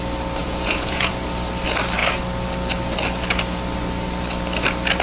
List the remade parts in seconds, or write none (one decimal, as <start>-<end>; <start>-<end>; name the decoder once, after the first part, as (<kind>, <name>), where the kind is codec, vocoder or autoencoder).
0.4-1.1 (vocoder, Vocos)